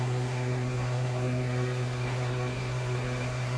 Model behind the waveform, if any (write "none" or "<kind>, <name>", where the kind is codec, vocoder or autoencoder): codec, SNAC